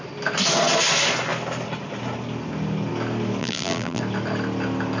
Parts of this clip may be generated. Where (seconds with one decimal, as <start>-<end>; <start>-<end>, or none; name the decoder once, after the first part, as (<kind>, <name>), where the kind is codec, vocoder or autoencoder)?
3.4-4.0 (vocoder, BigVGAN v2)